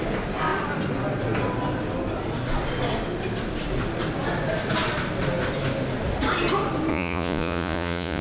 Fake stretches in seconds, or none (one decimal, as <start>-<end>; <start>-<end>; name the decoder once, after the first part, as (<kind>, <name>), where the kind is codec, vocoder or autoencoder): 6.9-8.2 (vocoder, Vocos)